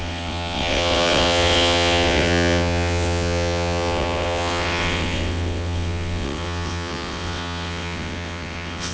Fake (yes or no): yes